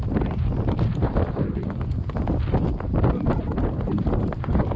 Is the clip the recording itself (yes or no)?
yes